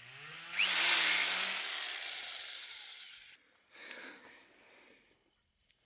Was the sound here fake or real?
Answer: real